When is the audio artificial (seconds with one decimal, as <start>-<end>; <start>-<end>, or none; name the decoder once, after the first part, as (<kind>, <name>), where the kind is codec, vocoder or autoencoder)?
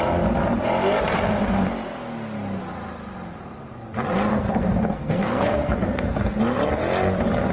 4.3-6.3 (codec, SNAC)